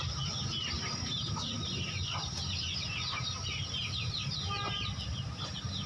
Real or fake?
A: real